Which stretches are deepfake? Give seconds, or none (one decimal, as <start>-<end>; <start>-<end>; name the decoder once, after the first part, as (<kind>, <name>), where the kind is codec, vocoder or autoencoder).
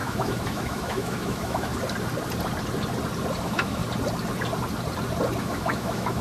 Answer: 0.0-1.7 (autoencoder, DAC-VAE); 3.4-3.8; 5.4-6.2